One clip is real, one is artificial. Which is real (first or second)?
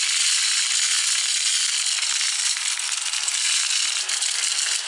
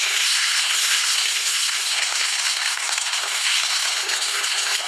first